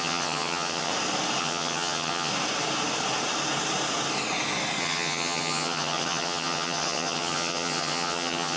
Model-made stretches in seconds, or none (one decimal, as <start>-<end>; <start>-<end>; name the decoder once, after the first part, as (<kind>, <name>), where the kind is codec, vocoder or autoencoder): 0.0-0.9 (vocoder, HiFi-GAN); 1.4-2.3; 4.8-8.6